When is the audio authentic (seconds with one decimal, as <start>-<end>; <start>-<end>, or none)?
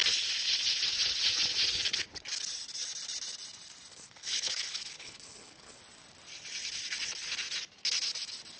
0.0-3.9; 5.8-8.6